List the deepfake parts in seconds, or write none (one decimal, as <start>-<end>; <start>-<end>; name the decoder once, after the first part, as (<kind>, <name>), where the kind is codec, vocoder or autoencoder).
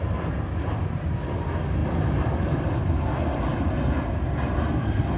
none